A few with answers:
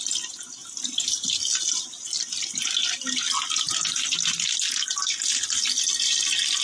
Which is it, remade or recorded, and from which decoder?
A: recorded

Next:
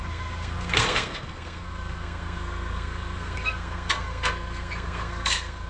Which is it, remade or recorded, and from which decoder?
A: remade, codec, SNAC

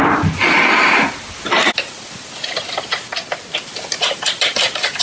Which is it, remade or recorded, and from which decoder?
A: remade, vocoder, BigVGAN v2